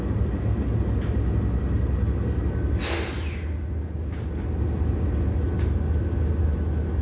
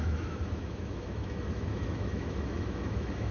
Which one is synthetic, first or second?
second